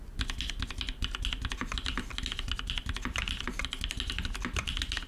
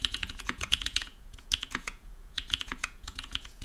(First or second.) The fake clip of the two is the second